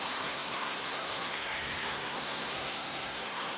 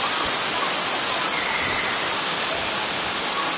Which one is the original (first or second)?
second